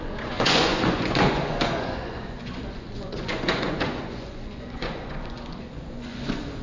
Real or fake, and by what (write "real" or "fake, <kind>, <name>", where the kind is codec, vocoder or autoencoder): fake, vocoder, Vocos